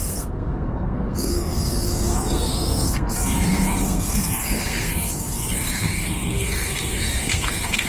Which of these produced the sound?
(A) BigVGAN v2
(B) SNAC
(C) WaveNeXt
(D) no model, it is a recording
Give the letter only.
B